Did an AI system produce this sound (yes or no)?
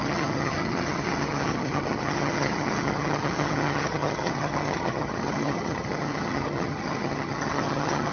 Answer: yes